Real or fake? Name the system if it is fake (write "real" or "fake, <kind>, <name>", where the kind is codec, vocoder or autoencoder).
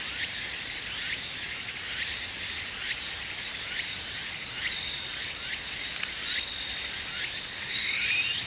real